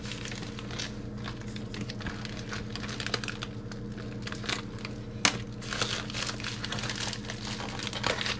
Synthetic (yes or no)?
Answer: no